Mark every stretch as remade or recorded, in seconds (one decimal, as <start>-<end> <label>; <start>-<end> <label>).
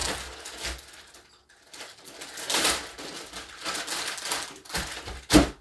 0.0-5.6 recorded